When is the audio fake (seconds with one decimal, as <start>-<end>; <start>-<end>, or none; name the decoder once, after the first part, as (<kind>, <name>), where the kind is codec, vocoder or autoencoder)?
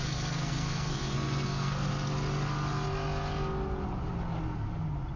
0.0-1.9 (codec, SNAC)